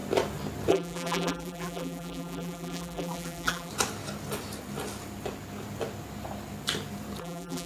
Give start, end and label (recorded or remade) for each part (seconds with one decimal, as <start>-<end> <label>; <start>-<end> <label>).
0.0-0.7 recorded; 0.7-3.7 remade; 3.7-7.2 recorded; 7.2-7.7 remade